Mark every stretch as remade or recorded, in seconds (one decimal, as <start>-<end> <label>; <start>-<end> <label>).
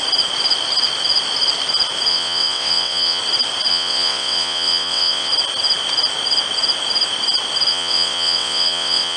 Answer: 0.0-2.1 recorded; 2.1-3.2 remade; 3.2-3.7 recorded; 3.7-5.3 remade; 5.3-7.7 recorded; 7.7-9.2 remade